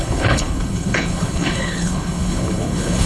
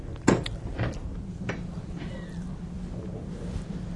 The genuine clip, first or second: second